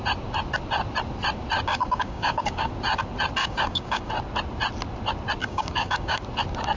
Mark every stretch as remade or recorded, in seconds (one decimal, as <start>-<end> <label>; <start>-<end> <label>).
0.0-1.7 recorded; 1.7-2.7 remade; 2.7-3.4 recorded; 3.4-4.1 remade; 4.1-5.4 recorded; 5.4-6.2 remade; 6.2-6.8 recorded

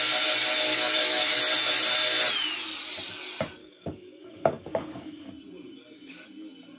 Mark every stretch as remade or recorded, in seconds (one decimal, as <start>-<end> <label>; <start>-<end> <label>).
0.0-0.7 recorded; 0.7-1.4 remade; 1.4-3.6 recorded; 3.6-5.3 remade; 5.3-6.8 recorded

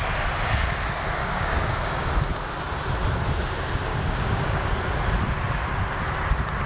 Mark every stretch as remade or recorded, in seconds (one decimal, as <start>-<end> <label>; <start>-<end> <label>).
0.0-1.2 recorded; 1.2-2.1 remade; 2.1-3.9 recorded; 3.9-4.7 remade; 4.7-6.7 recorded

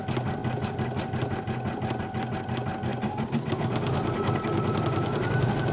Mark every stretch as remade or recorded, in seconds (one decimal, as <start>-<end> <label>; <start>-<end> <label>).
0.0-5.7 recorded

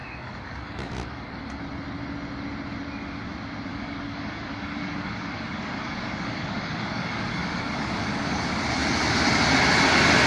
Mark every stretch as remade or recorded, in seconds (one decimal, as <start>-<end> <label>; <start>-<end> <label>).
0.0-1.4 remade; 1.4-3.7 recorded; 3.7-8.5 remade; 8.5-10.3 recorded